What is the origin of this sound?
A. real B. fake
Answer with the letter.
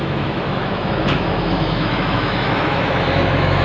B